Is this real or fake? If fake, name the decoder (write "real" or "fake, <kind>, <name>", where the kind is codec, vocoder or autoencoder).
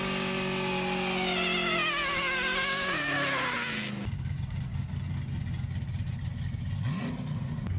real